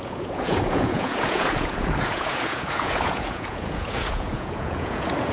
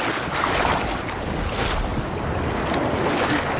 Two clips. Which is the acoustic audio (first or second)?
second